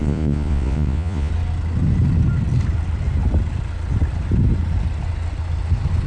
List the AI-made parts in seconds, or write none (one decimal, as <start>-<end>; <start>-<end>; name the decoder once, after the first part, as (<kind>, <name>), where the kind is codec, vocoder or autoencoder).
0.0-1.3 (vocoder, Vocos)